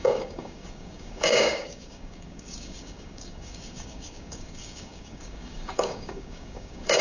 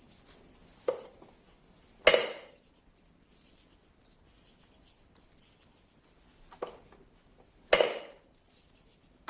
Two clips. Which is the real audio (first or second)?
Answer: second